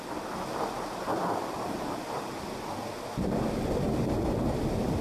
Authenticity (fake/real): real